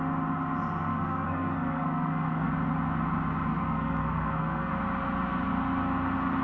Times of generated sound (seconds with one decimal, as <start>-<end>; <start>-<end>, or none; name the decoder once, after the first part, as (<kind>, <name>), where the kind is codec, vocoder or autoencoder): 0.9-2.5 (codec, SNAC); 3.5-4.7